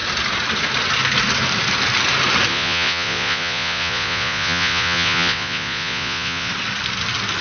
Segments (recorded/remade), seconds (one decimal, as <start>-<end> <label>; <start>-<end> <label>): 0.0-2.5 recorded; 2.5-6.5 remade; 6.5-7.4 recorded